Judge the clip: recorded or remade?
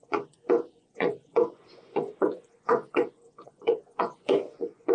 remade